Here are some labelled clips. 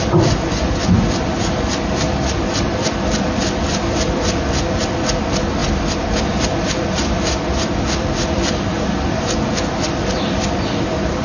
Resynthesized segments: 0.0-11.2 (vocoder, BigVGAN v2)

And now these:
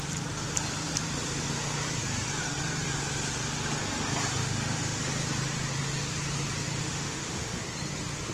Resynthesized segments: 4.4-5.0 (autoencoder, DAC-VAE); 6.8-7.6

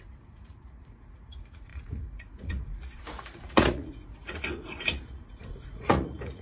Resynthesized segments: 0.0-6.4 (vocoder, Vocos)

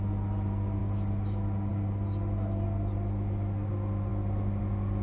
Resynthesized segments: none